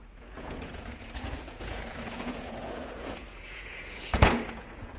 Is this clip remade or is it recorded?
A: remade